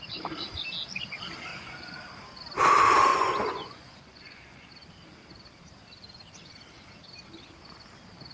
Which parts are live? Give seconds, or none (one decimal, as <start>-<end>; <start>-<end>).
0.0-1.5; 2.0-3.1; 4.7-8.3